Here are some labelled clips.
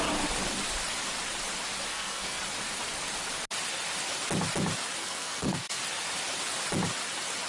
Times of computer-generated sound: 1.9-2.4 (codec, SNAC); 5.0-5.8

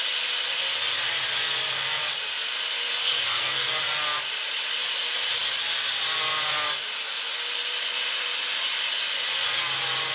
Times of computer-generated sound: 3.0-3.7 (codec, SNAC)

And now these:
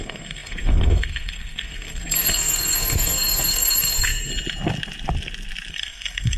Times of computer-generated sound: 0.0-4.3 (codec, SNAC); 5.7-6.4

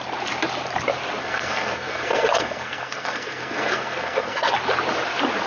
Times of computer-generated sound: 1.2-4.5 (codec, SNAC)

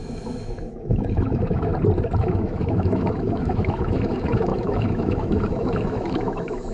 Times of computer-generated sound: 0.0-1.7 (autoencoder, DAC-VAE); 2.2-6.7